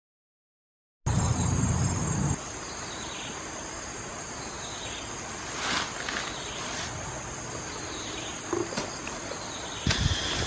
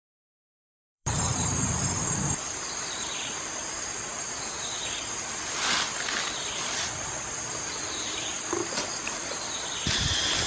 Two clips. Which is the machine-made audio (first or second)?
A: second